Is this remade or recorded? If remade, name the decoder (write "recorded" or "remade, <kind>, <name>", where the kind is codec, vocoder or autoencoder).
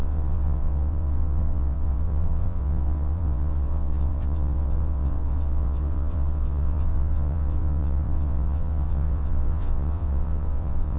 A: remade, vocoder, WaveNeXt